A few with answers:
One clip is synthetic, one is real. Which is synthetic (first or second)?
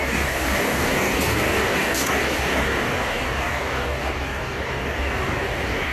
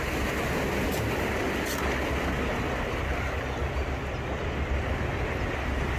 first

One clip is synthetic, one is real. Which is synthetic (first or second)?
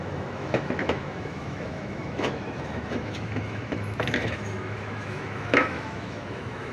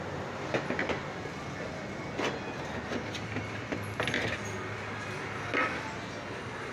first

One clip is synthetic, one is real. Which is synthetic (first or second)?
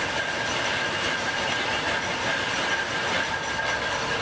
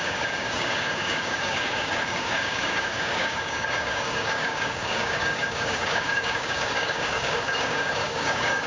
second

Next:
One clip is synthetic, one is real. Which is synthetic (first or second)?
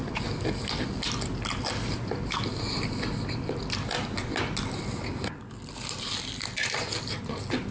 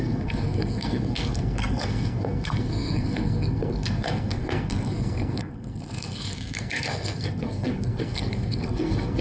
second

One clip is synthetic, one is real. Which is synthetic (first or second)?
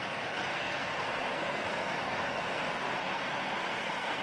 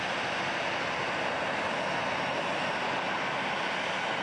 first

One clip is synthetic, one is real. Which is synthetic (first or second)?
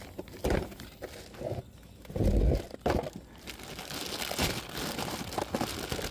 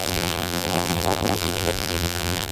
second